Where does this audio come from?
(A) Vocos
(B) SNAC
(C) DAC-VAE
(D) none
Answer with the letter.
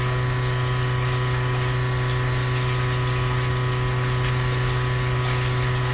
D